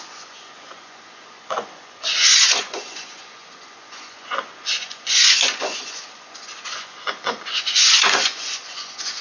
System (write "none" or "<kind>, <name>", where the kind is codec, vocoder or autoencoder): vocoder, Vocos